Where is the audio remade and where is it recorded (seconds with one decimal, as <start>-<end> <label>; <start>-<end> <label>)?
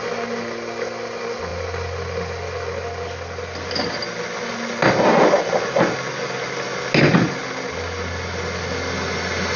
0.0-9.6 recorded